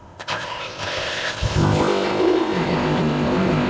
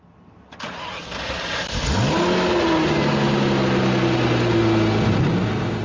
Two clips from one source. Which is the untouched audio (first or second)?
second